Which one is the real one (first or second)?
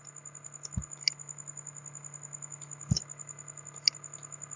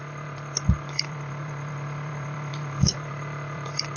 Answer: first